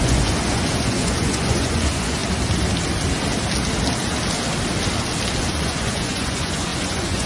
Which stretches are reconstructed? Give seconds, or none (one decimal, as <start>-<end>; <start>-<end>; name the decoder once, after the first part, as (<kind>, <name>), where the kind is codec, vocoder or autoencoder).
0.0-2.2 (vocoder, Vocos); 5.4-7.3